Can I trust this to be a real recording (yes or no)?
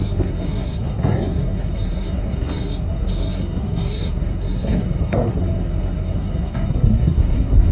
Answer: no